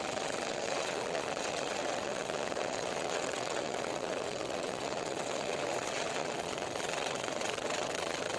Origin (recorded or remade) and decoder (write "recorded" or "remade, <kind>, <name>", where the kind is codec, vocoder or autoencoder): remade, vocoder, WaveNeXt